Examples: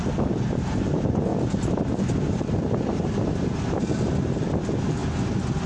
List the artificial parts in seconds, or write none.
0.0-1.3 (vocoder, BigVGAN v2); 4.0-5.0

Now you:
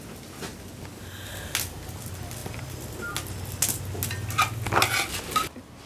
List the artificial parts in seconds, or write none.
0.5-1.3 (vocoder, BigVGAN v2)

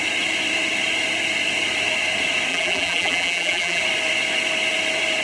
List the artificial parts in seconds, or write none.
2.5-3.8 (vocoder, BigVGAN v2)

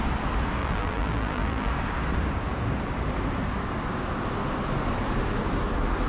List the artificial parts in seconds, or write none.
0.6-1.7 (vocoder, BigVGAN v2)

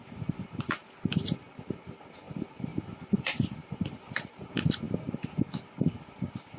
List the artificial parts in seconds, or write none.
0.0-6.6 (vocoder, BigVGAN v2)

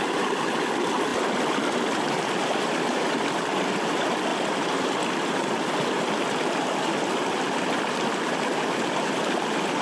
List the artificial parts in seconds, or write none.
0.0-9.8 (vocoder, BigVGAN v2)

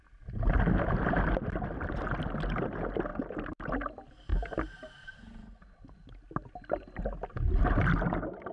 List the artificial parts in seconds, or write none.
3.1-3.7 (vocoder, BigVGAN v2); 4.3-5.9

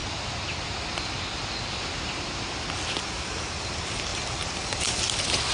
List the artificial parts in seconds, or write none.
4.1-4.8 (vocoder, BigVGAN v2)